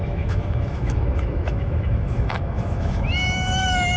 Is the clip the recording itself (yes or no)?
no